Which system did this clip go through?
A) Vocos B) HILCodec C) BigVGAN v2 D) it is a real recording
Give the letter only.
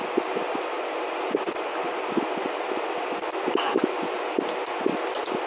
D